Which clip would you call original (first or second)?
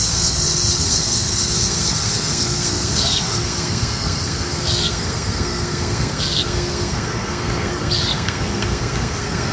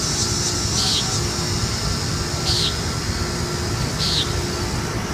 second